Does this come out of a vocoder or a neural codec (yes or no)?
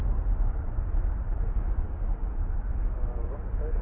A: no